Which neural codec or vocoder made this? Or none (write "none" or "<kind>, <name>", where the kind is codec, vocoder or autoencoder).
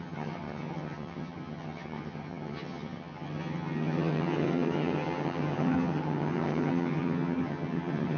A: vocoder, HiFi-GAN